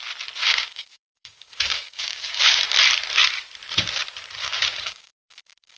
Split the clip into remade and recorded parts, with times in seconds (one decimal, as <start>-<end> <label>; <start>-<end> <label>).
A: 0.0-0.4 recorded; 0.4-2.6 remade; 2.6-4.4 recorded; 4.4-5.8 remade